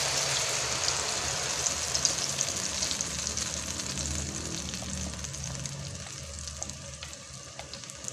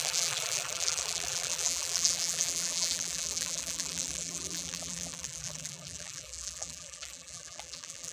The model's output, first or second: second